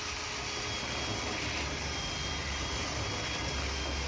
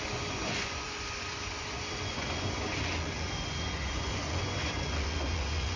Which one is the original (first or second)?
first